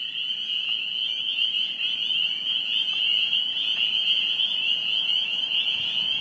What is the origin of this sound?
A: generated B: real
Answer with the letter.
A